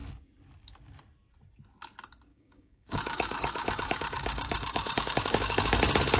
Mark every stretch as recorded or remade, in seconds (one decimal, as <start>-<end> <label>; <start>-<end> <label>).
0.0-2.3 recorded; 2.3-5.8 remade; 5.8-6.2 recorded